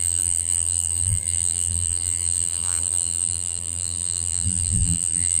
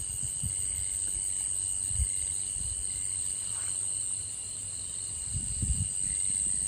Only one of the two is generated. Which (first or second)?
first